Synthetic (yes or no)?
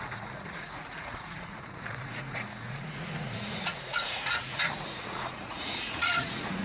yes